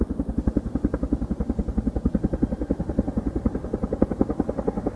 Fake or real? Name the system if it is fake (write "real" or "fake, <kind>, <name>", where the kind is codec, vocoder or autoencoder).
real